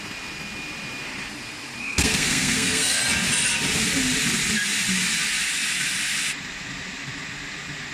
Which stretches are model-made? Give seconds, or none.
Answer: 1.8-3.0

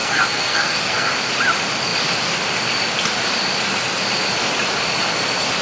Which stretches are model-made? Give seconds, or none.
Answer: 0.0-1.1

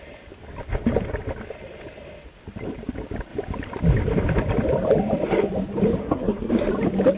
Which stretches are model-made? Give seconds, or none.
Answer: 6.0-6.5

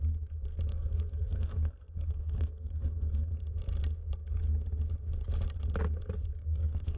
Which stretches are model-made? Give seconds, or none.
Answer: 0.7-3.3; 6.4-7.0

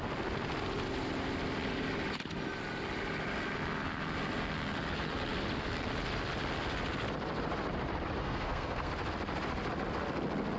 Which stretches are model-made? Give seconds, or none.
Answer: 8.2-8.9

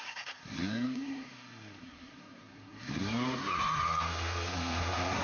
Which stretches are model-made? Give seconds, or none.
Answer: 0.0-5.2

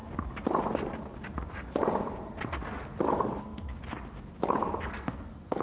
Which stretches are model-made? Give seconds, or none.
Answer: 3.4-3.8; 4.9-5.6

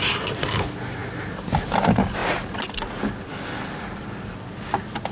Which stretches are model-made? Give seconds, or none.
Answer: none